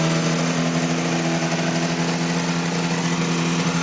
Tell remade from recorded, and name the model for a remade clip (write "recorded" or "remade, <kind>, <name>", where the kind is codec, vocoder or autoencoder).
recorded